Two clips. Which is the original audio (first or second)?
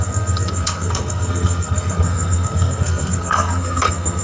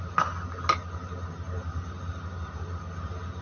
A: second